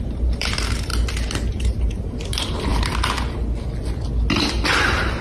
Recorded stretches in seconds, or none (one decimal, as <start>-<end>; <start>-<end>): 0.9-1.5; 2.7-4.8